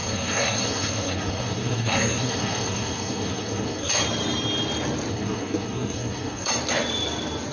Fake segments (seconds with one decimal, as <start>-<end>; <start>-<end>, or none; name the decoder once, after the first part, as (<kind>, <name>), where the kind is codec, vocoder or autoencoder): 0.0-3.9 (codec, SNAC); 5.1-6.5